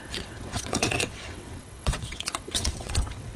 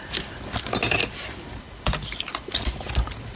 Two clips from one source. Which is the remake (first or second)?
first